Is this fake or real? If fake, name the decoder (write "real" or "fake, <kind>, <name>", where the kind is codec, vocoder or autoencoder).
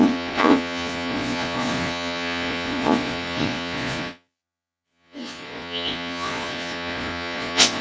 fake, vocoder, Vocos